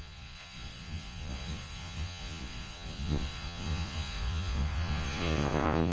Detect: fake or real fake